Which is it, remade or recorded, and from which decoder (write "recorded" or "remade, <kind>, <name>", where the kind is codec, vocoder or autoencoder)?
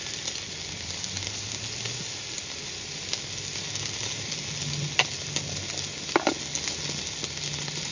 recorded